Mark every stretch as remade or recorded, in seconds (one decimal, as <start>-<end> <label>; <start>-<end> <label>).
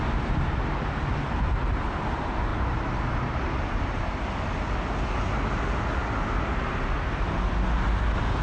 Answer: 0.0-8.4 recorded